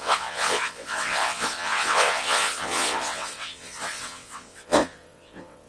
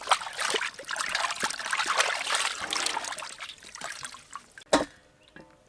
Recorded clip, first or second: second